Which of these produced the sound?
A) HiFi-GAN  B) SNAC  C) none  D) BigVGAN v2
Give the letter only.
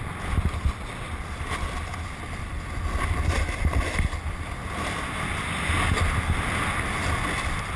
C